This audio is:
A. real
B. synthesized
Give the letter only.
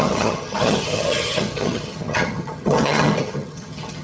B